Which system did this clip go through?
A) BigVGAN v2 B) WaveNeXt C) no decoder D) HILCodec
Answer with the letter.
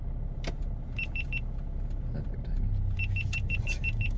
A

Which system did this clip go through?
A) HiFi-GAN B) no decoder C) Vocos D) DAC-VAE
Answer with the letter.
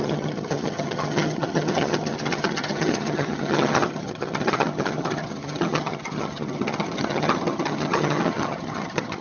A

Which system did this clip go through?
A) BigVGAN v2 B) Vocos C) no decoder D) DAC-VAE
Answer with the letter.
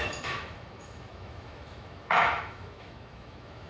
D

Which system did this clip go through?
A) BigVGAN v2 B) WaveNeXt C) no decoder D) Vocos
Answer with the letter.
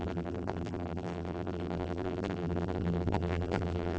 A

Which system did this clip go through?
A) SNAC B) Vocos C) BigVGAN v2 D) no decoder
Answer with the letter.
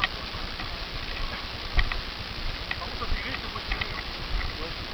D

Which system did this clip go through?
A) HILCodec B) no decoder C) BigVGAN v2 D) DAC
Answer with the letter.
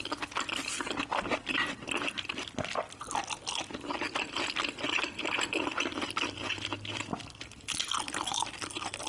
B